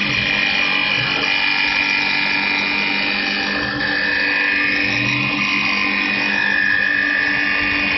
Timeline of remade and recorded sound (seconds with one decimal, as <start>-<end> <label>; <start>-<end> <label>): 0.0-8.0 recorded